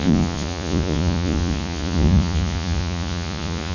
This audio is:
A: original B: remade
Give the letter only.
B